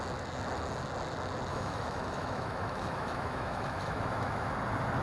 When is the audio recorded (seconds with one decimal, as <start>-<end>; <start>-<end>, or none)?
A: 0.0-1.5; 4.5-5.0

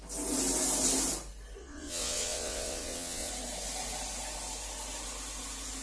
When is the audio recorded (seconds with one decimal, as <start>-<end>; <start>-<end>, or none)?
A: 0.0-1.6; 3.3-5.8

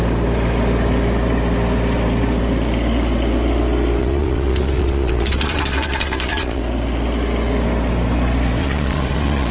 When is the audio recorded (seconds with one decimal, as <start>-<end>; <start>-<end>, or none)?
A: 0.0-4.0; 6.6-8.6

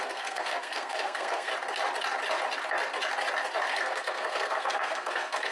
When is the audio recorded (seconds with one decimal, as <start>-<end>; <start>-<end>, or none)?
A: 1.5-3.7

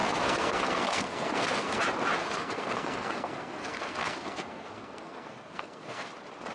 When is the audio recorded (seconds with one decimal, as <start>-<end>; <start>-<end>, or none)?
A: 1.8-2.2; 6.1-6.5

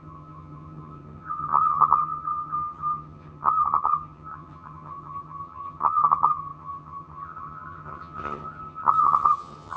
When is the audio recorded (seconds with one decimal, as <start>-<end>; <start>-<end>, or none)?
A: none

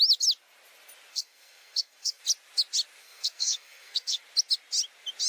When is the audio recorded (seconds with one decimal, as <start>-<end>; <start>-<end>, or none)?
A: 0.0-1.1; 2.2-3.0; 4.2-5.3